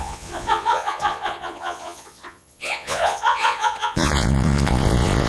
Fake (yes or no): yes